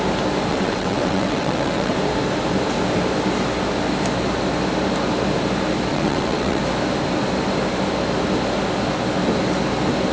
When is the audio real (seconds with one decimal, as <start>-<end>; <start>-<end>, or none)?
0.0-0.5; 1.9-5.9; 6.6-10.1